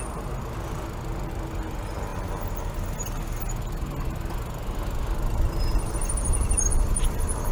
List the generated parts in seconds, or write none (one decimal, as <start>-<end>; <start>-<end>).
none